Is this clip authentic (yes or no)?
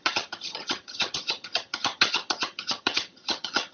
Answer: no